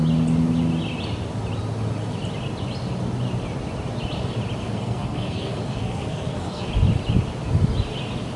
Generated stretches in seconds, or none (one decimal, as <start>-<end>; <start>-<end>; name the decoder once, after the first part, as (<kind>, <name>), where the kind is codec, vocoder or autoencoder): 4.6-6.7 (codec, SNAC)

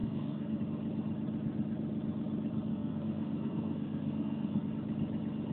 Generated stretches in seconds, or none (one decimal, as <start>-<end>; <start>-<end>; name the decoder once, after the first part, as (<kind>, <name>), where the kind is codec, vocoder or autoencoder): 0.0-0.6 (codec, SNAC); 2.7-4.7

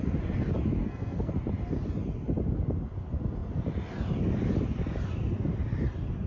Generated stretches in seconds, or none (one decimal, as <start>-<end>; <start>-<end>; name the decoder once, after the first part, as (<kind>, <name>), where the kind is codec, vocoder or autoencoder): 0.8-1.3 (codec, SNAC)

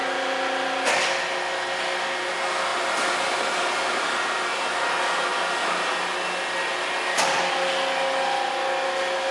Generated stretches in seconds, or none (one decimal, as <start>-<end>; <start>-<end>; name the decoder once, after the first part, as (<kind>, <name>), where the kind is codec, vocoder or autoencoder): none

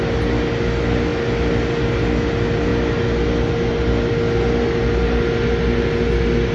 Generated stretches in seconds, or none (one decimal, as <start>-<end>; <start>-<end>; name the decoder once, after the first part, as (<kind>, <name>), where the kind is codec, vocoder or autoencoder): none

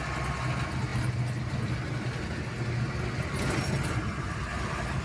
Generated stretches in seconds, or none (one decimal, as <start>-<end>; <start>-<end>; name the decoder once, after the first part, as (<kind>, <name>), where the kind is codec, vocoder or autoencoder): none